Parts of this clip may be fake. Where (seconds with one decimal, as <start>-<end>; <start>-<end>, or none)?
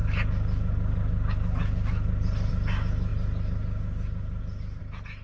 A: none